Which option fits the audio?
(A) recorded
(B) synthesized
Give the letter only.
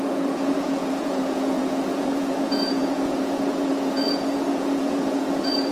B